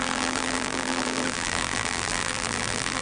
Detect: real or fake fake